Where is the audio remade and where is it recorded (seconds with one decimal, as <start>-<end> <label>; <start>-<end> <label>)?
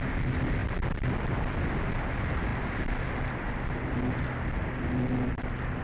0.0-5.8 recorded